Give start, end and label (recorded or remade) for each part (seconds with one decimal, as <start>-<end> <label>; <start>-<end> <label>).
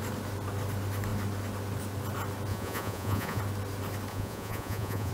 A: 0.0-2.5 recorded; 2.5-3.4 remade; 3.4-4.1 recorded; 4.1-5.1 remade